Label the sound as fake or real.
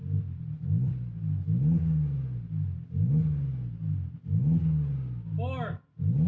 real